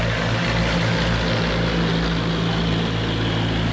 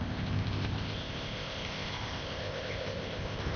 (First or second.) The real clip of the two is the first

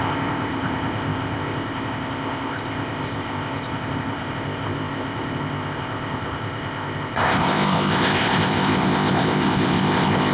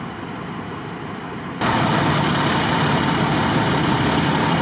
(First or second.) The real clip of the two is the second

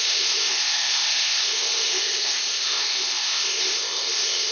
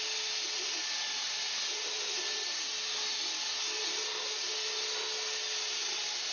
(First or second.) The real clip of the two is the second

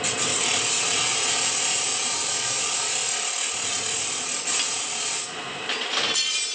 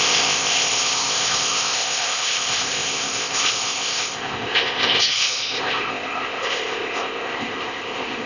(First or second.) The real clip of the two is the first